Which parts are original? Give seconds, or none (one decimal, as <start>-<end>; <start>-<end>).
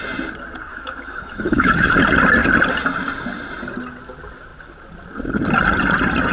0.0-0.7; 1.9-6.3